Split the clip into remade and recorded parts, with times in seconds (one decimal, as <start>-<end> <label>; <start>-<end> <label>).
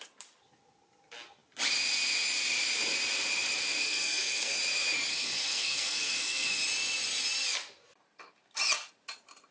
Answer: 0.0-3.8 recorded; 3.8-4.6 remade; 4.6-5.1 recorded; 5.1-6.6 remade; 6.6-9.5 recorded